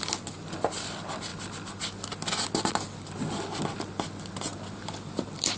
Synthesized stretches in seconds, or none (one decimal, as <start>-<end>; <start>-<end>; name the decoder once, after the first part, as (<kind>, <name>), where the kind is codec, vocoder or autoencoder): none